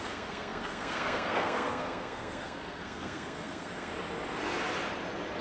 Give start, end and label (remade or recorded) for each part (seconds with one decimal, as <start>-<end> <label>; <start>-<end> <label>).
0.0-3.9 remade; 3.9-5.4 recorded

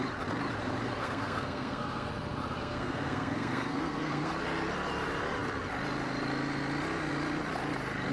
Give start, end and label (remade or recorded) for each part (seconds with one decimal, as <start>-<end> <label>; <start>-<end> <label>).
0.0-1.0 recorded; 1.0-2.1 remade; 2.1-2.6 recorded; 2.6-4.3 remade; 4.3-8.1 recorded

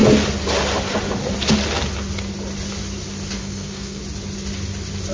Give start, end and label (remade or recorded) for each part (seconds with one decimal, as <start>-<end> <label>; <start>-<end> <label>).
0.0-3.4 recorded; 3.4-4.0 remade; 4.0-5.1 recorded

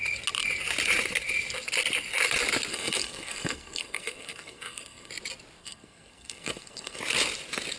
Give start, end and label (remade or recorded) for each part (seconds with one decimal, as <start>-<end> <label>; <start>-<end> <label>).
0.0-2.7 recorded; 2.7-5.1 remade; 5.1-5.6 recorded; 5.6-7.0 remade; 7.0-7.8 recorded

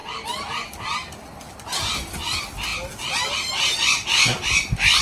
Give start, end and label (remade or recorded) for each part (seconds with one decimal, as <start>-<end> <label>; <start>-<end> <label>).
0.0-5.0 recorded

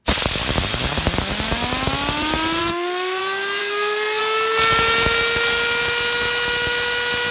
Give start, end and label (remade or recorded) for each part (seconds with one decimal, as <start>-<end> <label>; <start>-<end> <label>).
0.0-2.6 recorded; 2.6-3.2 remade; 3.2-3.6 recorded; 3.6-4.2 remade; 4.2-7.3 recorded

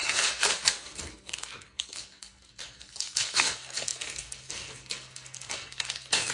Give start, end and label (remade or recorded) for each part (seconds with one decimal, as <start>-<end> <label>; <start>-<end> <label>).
0.0-6.3 remade